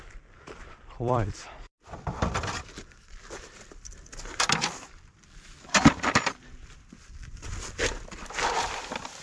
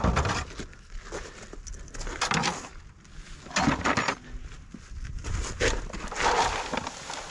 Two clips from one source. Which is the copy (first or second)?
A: first